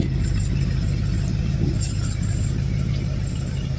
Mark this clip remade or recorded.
recorded